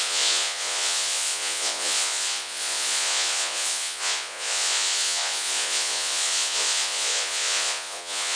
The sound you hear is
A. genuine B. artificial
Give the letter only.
B